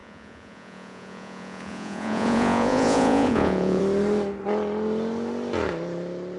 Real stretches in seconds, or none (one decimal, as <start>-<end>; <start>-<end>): 3.8-6.4